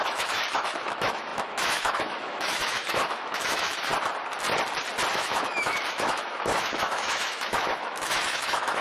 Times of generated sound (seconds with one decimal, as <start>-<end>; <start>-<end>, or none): 0.0-3.9; 5.1-8.8